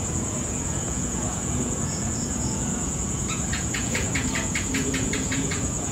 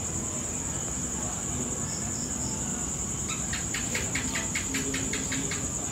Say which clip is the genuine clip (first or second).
second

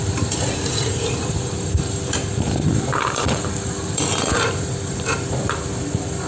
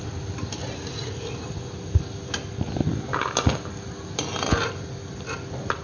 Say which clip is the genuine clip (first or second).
second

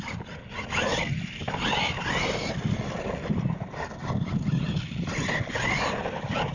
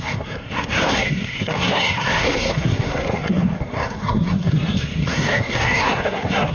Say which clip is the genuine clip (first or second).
first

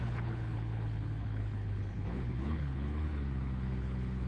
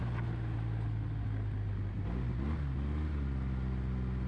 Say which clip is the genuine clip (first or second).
second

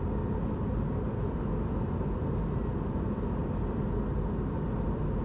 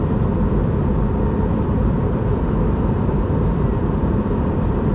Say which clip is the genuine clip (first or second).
first